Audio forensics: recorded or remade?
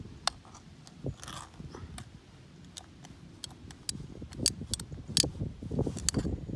recorded